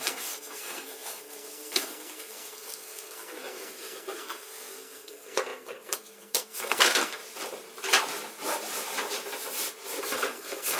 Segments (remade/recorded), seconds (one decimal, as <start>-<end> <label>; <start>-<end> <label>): 0.0-7.2 remade; 7.2-10.0 recorded; 10.0-10.8 remade